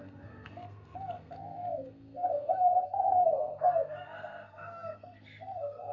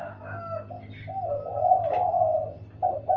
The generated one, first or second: first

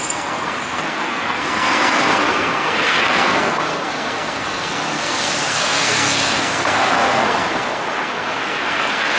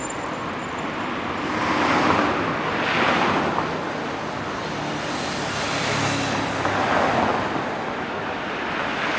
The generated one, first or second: first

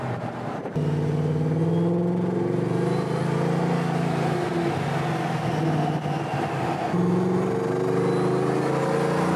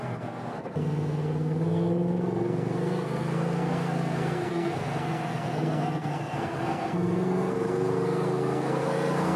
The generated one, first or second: second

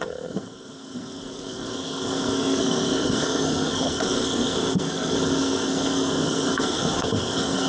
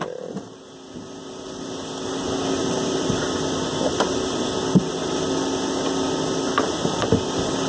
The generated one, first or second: first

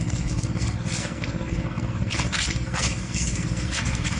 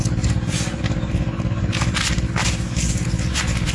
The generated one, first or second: first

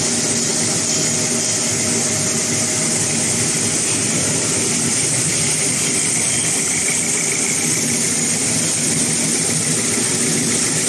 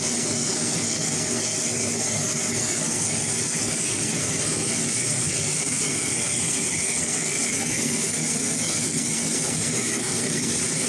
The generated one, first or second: second